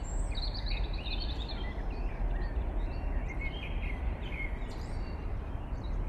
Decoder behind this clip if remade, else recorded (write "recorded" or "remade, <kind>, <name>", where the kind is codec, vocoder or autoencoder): remade, vocoder, BigVGAN v2